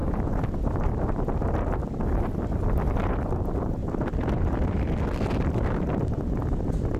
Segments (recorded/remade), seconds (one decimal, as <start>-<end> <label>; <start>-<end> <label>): 0.0-7.0 recorded